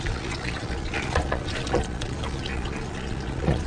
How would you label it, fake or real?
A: fake